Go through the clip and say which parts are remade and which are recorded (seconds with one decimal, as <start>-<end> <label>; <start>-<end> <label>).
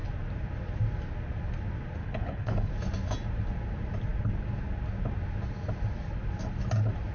0.0-2.0 recorded; 2.0-2.7 remade; 2.7-7.1 recorded